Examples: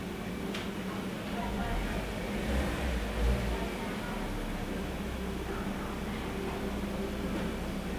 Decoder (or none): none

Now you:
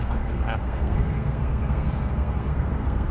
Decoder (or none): codec, SNAC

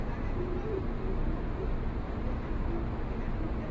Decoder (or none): none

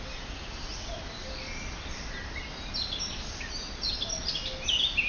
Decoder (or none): none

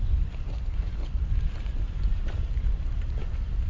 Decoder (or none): none